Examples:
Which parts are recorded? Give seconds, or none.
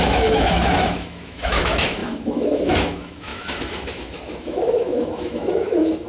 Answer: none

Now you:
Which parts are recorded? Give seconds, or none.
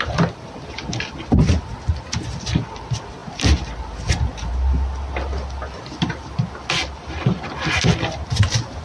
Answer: 0.0-1.7; 2.7-3.2; 4.1-6.8; 7.5-8.8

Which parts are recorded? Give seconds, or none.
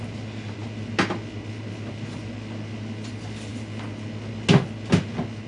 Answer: 0.0-5.5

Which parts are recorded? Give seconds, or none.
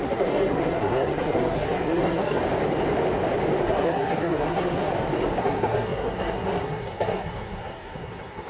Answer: 2.4-3.6; 4.9-5.4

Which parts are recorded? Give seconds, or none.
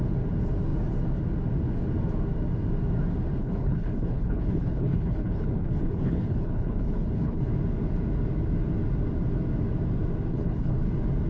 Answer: 0.0-3.4; 7.5-10.3; 10.9-11.3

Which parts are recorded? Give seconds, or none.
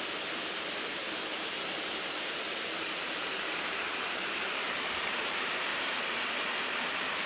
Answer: 0.0-0.9; 5.3-5.7; 6.2-7.3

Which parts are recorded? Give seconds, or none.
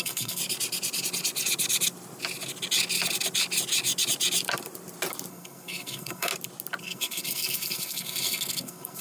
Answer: 0.4-5.3; 6.3-6.8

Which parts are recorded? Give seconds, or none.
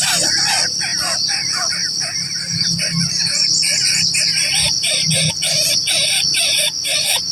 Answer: 0.0-0.9; 5.3-7.3